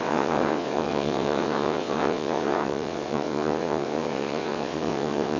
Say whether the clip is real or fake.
fake